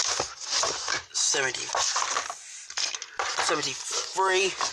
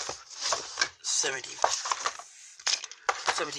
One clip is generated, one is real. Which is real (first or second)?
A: first